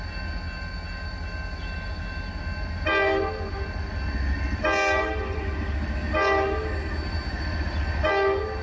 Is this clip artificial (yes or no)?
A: no